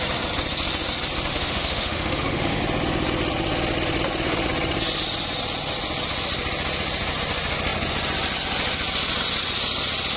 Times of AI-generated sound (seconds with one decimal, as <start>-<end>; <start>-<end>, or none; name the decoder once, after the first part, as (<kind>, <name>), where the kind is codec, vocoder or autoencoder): 1.3-2.6 (autoencoder, DAC-VAE)